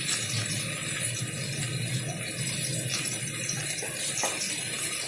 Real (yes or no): yes